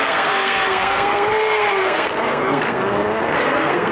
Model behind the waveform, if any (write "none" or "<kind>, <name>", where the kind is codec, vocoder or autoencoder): codec, SNAC